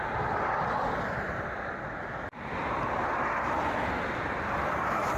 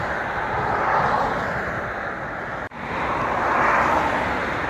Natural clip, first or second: second